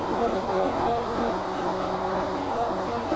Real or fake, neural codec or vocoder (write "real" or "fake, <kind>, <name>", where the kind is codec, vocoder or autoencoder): fake, codec, SNAC